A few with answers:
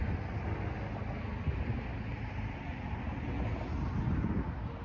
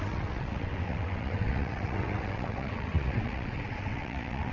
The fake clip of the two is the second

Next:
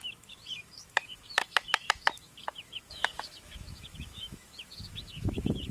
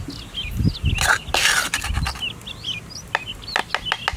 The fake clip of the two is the first